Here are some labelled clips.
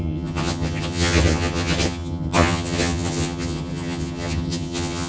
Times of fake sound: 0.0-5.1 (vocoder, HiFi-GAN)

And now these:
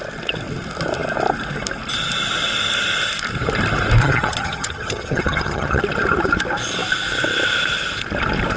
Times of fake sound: 4.0-5.8 (vocoder, HiFi-GAN)

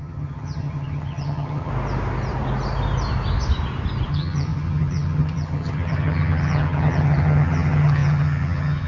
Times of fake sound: 0.0-1.7 (vocoder, HiFi-GAN); 4.1-8.9